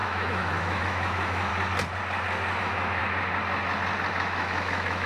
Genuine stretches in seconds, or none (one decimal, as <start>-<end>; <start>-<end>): 1.5-2.6; 3.0-4.1